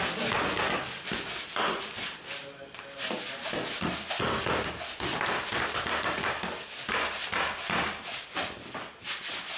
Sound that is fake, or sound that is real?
real